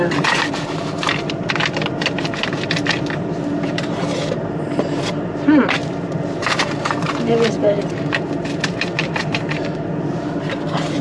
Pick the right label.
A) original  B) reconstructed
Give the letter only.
B